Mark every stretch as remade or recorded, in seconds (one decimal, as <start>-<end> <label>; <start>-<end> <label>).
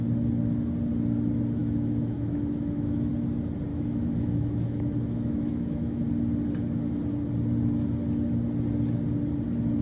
0.0-1.6 recorded; 1.6-3.1 remade; 3.1-3.7 recorded; 3.7-6.0 remade; 6.0-9.8 recorded